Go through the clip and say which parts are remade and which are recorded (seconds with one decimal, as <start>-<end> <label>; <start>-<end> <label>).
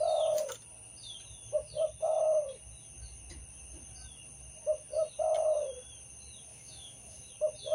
0.0-6.5 recorded; 6.5-7.3 remade; 7.3-7.7 recorded